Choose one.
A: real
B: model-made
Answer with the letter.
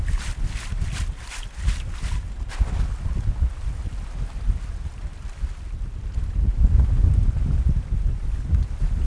A